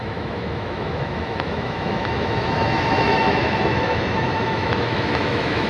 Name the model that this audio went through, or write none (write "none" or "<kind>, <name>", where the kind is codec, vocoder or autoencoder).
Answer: autoencoder, DAC-VAE